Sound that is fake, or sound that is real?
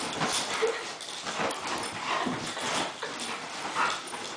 real